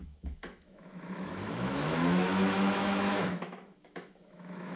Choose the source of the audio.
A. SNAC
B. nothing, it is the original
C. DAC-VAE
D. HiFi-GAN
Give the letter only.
C